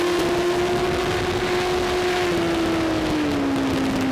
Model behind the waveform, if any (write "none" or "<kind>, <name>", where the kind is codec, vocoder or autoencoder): none